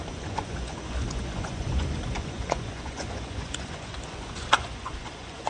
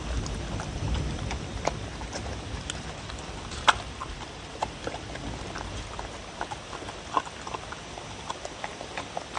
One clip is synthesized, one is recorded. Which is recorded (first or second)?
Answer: second